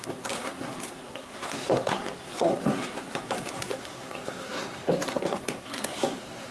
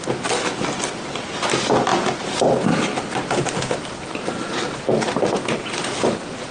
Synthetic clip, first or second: first